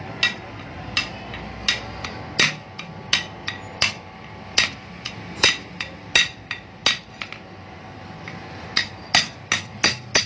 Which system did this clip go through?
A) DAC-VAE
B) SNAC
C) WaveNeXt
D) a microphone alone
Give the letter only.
D